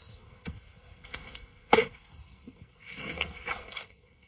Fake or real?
fake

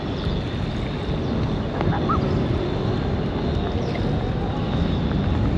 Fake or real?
real